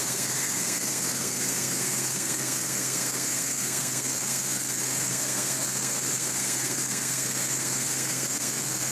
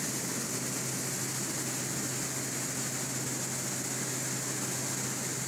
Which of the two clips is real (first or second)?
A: second